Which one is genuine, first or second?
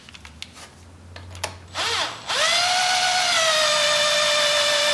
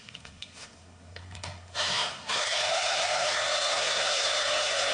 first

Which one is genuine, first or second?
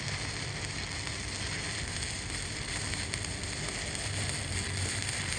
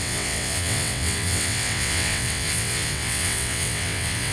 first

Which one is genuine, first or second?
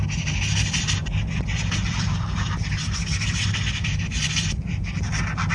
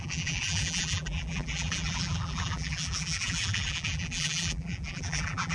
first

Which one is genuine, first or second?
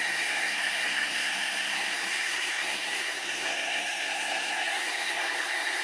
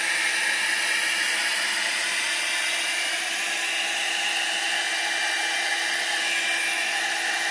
second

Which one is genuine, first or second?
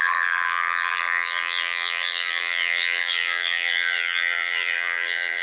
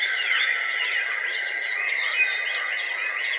second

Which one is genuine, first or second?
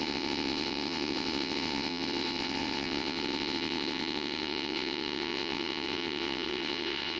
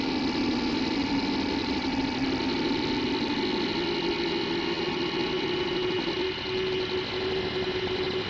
second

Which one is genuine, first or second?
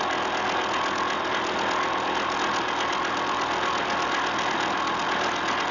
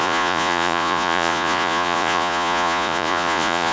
first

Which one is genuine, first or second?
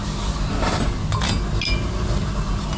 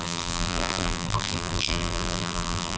first